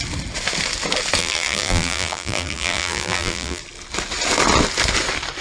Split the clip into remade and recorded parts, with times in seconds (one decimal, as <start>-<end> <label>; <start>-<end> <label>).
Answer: 0.0-1.2 recorded; 1.2-3.6 remade; 3.6-5.4 recorded